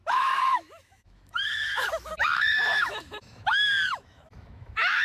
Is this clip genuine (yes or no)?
no